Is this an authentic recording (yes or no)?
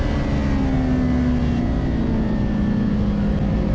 yes